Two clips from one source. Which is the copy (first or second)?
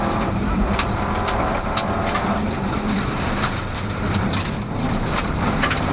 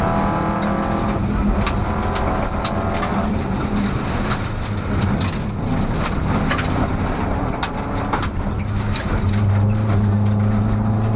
first